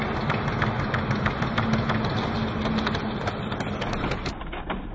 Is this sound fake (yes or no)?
no